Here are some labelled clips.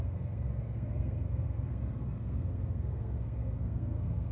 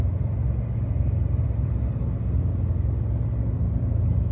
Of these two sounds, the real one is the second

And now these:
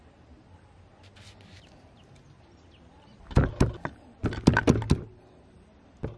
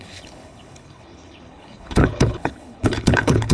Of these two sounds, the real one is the first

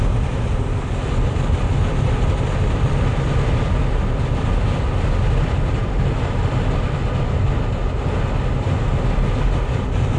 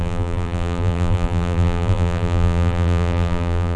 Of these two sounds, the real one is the first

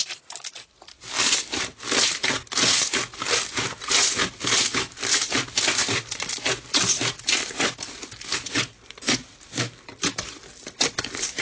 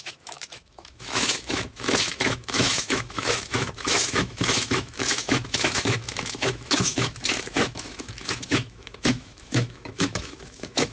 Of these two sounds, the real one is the first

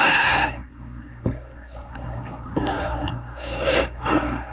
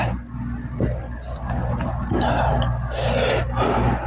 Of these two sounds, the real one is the second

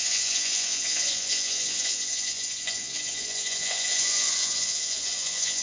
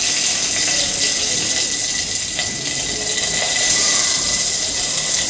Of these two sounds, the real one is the second